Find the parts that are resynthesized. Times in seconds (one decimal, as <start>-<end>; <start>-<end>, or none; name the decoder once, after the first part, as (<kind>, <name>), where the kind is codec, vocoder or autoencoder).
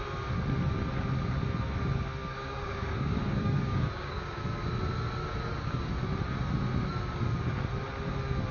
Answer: 2.2-4.4 (codec, DAC); 5.2-5.9